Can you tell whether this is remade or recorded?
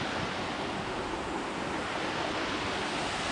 recorded